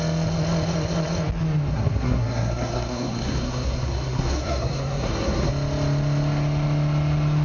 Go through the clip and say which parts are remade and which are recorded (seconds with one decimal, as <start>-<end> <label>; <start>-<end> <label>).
0.0-1.7 recorded; 1.7-5.5 remade; 5.5-7.4 recorded